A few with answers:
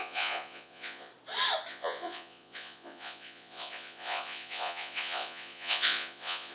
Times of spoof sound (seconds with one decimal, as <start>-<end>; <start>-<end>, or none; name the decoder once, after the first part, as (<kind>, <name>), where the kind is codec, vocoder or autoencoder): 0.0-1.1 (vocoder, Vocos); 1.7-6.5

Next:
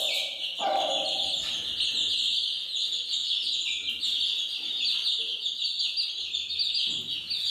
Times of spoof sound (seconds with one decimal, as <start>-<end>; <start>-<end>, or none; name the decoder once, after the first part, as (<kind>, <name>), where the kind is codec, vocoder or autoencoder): none

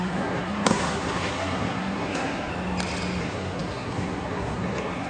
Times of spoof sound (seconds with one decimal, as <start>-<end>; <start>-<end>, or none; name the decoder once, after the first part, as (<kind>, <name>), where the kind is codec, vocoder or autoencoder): 0.0-2.5 (codec, SNAC); 3.2-5.1

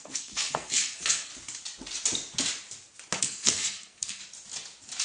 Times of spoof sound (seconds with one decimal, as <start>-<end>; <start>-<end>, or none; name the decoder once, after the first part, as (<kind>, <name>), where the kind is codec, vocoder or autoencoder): 0.0-1.3 (codec, SNAC); 3.2-4.2

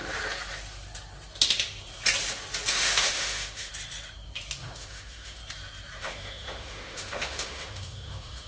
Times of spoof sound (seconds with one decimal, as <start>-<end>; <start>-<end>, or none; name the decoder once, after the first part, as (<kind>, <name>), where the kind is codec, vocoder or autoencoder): 2.7-3.7 (autoencoder, DAC-VAE); 4.6-5.4; 6.0-8.5